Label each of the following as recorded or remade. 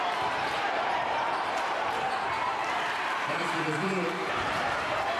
remade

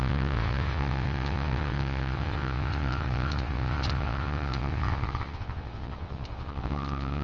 remade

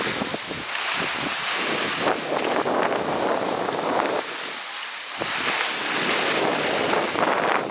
recorded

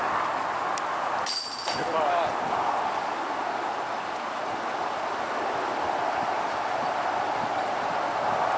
recorded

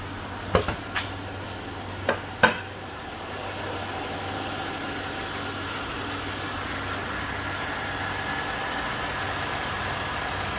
recorded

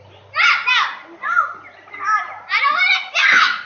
recorded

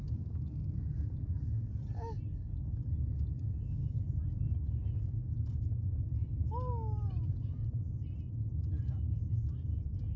recorded